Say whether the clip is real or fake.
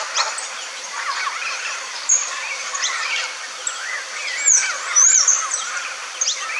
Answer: real